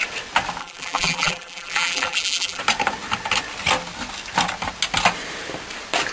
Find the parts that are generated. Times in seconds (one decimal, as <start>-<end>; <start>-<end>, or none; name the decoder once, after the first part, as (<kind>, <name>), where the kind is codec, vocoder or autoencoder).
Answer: 0.6-2.6 (vocoder, BigVGAN v2)